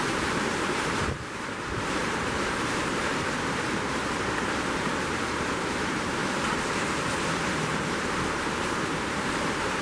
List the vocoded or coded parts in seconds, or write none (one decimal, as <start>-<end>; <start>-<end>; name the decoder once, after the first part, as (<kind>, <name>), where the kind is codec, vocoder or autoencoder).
0.0-6.2 (vocoder, BigVGAN v2); 7.4-9.8